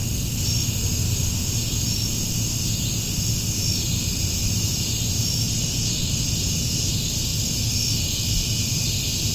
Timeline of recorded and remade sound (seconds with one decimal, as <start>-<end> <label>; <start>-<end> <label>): 0.0-4.4 recorded; 4.4-5.1 remade; 5.1-9.3 recorded